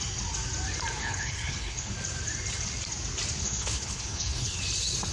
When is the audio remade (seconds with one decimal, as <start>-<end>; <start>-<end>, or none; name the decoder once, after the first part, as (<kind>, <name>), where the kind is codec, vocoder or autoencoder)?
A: 1.0-1.9 (codec, HILCodec); 3.4-4.6